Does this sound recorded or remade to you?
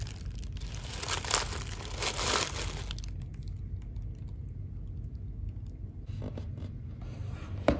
recorded